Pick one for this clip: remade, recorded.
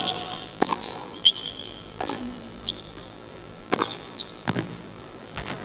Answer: remade